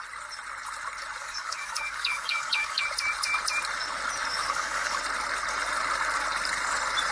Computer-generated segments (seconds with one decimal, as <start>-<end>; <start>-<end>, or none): 1.2-2.8; 4.3-5.0